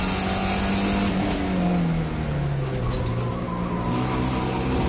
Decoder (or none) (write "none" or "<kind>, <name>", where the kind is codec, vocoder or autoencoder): none